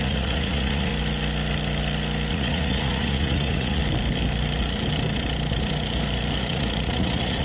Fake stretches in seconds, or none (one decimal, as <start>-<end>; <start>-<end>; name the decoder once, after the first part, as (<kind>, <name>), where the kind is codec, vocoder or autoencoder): 0.0-0.9 (vocoder, Vocos); 2.3-3.8; 6.4-7.4